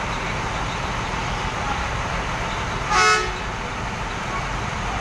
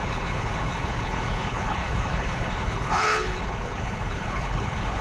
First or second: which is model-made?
second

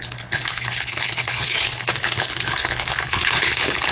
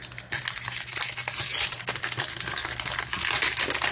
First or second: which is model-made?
first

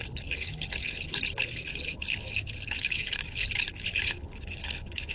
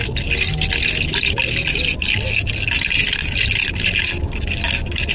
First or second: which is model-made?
first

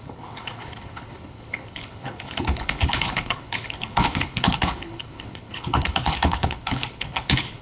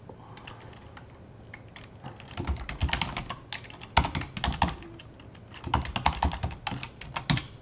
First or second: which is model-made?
first